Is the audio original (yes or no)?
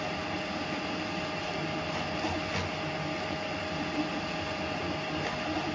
yes